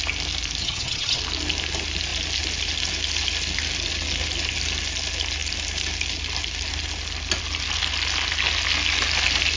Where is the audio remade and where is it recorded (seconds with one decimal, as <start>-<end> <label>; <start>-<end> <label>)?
0.0-0.6 recorded; 0.6-1.2 remade; 1.2-9.6 recorded